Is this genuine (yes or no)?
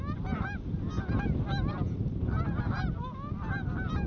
yes